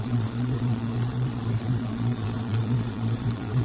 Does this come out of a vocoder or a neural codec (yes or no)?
yes